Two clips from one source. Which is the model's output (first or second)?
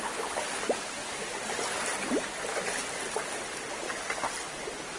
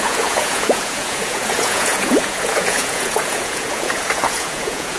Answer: second